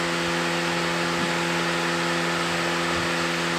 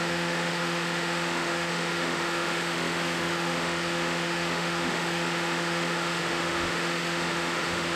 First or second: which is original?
first